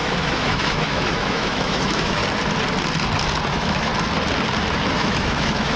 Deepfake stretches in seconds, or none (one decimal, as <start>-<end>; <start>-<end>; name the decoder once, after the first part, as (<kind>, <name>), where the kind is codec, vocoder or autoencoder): 0.0-2.2 (autoencoder, DAC-VAE); 3.5-3.9; 4.9-5.8